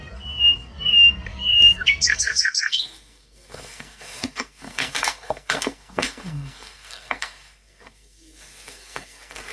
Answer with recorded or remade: remade